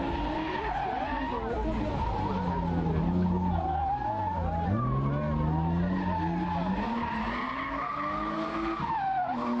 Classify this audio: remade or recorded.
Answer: recorded